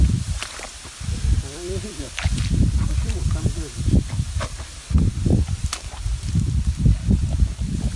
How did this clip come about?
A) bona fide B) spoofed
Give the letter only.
B